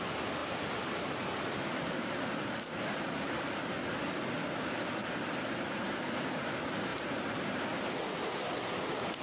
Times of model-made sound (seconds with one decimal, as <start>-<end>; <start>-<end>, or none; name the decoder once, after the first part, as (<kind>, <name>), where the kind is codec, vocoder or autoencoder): 0.4-2.2 (vocoder, BigVGAN v2)